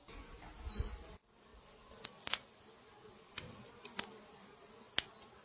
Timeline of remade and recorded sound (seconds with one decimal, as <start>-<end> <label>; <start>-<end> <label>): 0.0-5.4 recorded